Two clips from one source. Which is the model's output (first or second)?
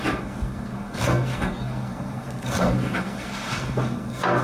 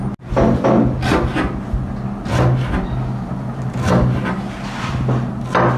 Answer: first